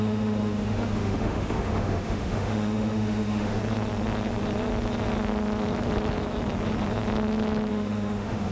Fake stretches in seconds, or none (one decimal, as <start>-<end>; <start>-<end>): 0.0-3.6; 7.7-8.5